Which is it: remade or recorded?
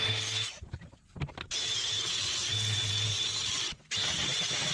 recorded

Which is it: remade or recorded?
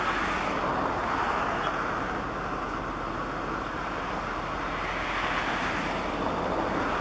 recorded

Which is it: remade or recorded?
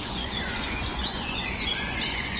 remade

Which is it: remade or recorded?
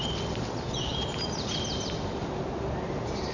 recorded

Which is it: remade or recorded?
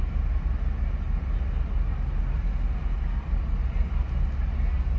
recorded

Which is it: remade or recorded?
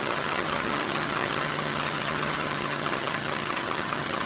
remade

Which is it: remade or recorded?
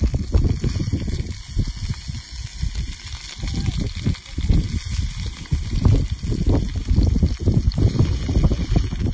recorded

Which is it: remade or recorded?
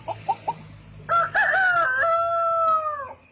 recorded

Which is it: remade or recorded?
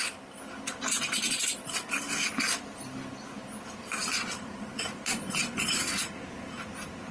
recorded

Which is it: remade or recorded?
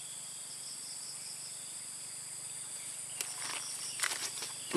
recorded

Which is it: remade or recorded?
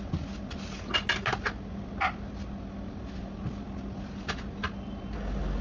recorded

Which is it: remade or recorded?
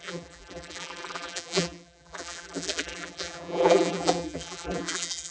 remade